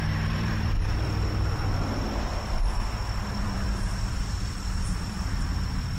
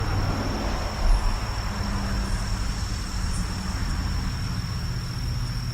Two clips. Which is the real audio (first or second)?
second